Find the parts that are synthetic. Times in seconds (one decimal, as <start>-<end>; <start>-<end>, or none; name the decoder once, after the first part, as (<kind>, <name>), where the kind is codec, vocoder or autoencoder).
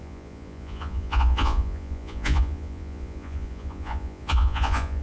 0.0-5.0 (vocoder, Vocos)